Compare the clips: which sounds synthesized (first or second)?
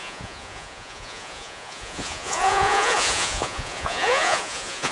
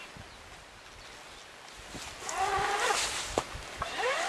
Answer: first